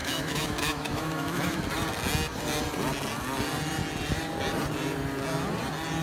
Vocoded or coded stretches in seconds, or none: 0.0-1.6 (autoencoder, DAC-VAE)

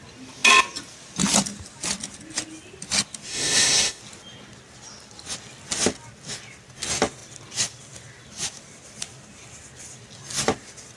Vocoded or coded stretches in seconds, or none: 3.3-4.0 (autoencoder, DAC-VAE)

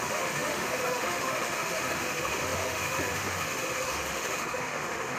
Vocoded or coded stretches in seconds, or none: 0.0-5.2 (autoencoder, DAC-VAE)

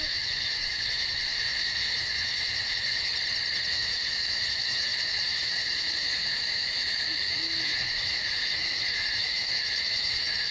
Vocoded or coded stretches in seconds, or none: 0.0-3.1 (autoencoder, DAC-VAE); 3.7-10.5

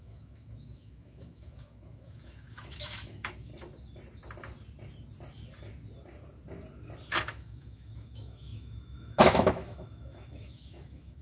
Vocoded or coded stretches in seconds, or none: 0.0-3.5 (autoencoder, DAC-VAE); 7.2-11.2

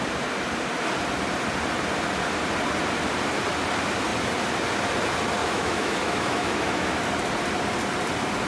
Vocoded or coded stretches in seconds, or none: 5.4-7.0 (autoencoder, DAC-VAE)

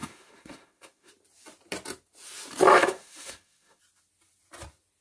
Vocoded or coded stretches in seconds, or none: 0.0-1.1 (autoencoder, DAC-VAE); 2.7-3.8